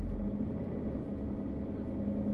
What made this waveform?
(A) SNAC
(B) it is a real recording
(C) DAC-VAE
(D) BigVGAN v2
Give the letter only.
B